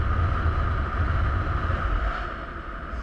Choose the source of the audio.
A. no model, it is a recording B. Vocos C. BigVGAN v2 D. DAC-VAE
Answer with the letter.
A